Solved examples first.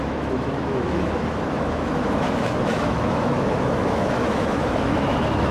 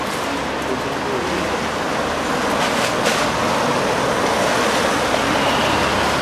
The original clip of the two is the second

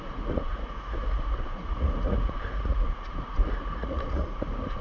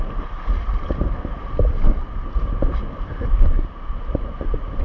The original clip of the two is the second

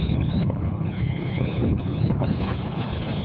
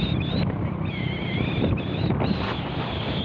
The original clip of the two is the second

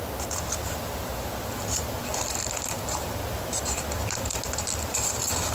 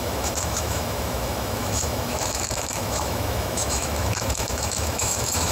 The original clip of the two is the first